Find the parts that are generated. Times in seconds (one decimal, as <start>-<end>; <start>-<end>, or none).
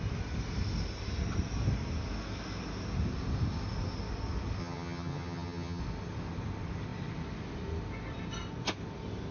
4.6-5.8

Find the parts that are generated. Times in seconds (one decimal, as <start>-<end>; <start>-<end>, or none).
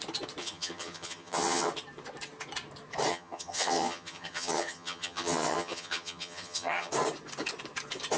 0.4-1.7; 3.1-6.9